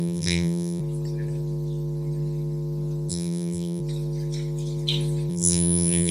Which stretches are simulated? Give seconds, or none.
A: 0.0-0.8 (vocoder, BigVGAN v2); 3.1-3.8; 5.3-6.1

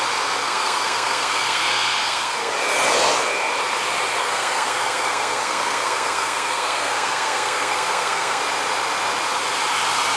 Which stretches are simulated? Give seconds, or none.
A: 0.4-2.5 (codec, SNAC); 4.2-8.4